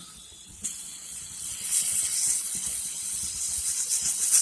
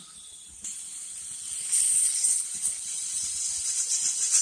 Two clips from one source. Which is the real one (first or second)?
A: second